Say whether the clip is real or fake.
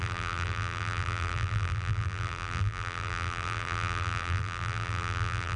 fake